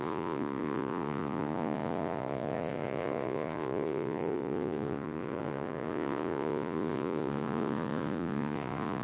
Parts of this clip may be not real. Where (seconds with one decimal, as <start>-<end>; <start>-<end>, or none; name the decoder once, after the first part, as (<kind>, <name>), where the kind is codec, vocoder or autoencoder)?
0.0-9.0 (vocoder, Vocos)